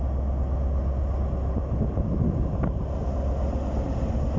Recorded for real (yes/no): yes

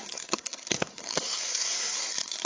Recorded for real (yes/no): no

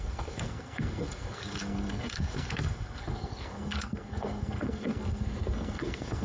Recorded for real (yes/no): no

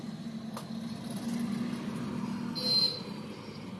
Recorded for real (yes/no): yes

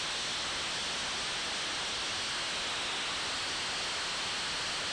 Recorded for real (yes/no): yes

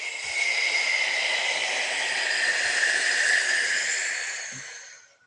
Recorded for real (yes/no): yes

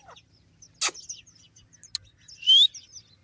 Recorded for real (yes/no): yes